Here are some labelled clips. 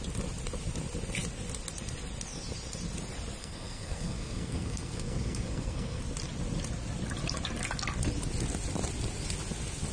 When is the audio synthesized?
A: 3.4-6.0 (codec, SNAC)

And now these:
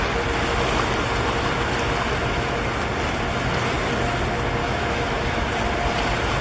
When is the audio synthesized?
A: 4.6-5.5 (autoencoder, DAC-VAE)